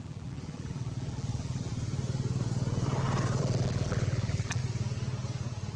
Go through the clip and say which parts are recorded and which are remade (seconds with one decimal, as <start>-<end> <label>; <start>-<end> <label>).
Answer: 0.0-1.7 remade; 1.7-3.4 recorded; 3.4-4.6 remade; 4.6-5.8 recorded